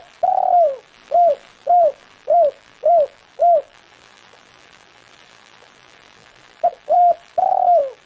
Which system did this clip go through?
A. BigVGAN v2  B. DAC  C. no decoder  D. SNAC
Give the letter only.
A